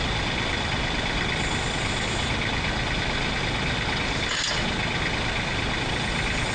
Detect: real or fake real